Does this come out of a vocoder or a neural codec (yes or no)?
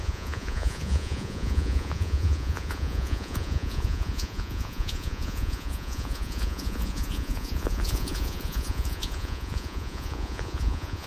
yes